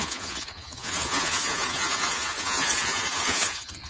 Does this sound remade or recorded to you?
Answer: remade